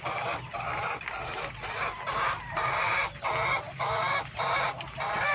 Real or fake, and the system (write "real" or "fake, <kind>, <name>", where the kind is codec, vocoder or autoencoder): real